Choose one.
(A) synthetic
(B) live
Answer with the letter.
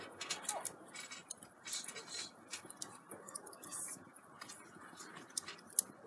B